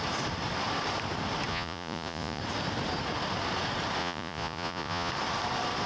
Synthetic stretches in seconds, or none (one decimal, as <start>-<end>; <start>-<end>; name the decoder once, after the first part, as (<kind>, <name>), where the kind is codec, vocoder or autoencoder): 1.5-2.4 (vocoder, Vocos); 4.0-5.1